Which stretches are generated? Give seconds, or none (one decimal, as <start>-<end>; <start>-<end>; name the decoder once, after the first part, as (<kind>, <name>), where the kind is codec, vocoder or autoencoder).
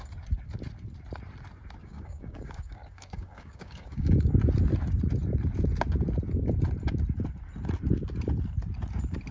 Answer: 1.8-4.3 (codec, DAC)